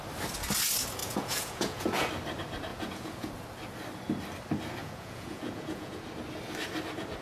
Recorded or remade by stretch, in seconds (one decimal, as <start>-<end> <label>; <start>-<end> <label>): 0.0-1.0 recorded; 1.0-2.1 remade; 2.1-2.7 recorded; 2.7-3.3 remade; 3.3-4.8 recorded; 4.8-6.0 remade; 6.0-7.2 recorded